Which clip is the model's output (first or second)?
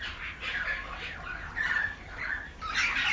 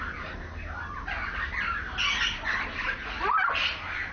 first